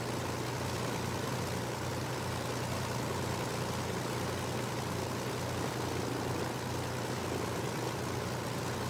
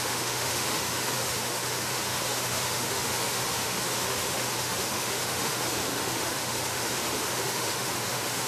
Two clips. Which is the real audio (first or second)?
first